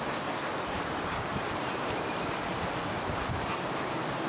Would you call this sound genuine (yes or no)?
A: yes